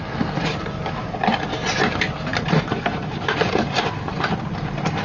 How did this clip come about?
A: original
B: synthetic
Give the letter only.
A